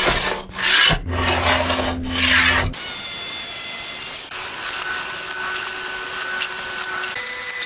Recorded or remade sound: recorded